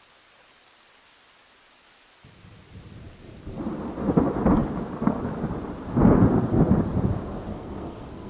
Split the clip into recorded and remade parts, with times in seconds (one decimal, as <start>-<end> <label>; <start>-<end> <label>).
0.0-7.5 recorded; 7.5-8.3 remade